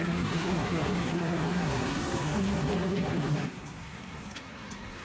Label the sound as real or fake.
fake